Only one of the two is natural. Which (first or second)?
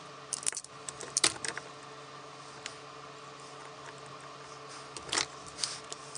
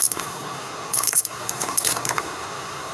first